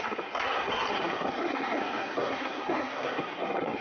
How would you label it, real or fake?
fake